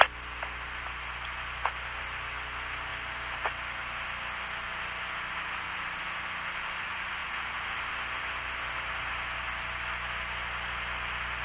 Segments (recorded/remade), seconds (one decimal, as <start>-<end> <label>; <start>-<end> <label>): 0.0-11.4 recorded